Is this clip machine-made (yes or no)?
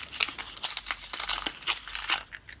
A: no